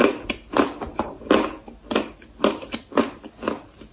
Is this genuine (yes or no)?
yes